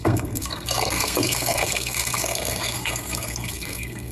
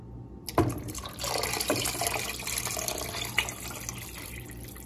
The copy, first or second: first